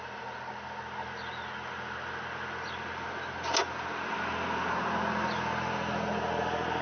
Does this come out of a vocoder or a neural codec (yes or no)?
no